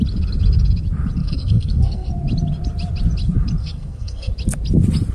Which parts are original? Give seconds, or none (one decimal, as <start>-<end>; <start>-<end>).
0.0-1.2; 2.1-3.6; 4.3-5.1